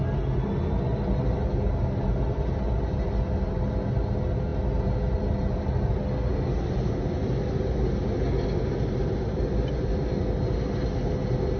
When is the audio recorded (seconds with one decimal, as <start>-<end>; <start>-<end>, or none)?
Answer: 0.0-11.6